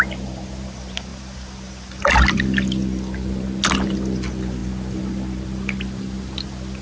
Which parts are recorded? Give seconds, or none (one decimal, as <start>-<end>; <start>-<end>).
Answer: 0.0-6.8